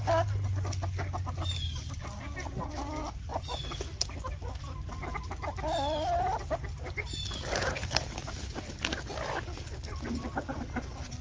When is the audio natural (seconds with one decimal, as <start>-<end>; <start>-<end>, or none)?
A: 0.0-11.2